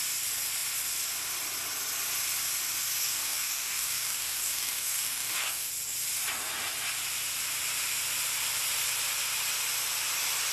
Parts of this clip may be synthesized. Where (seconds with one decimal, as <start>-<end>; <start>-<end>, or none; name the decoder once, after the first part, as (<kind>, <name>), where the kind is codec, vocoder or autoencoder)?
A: 3.0-5.7 (codec, DAC)